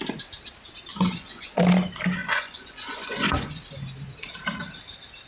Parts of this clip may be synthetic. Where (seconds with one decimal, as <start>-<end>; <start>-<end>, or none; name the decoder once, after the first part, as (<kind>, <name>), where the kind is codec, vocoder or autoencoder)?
0.9-1.6 (vocoder, Vocos); 2.2-3.6